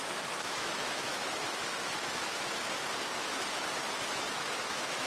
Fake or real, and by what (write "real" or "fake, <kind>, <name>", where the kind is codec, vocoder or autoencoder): fake, autoencoder, DAC-VAE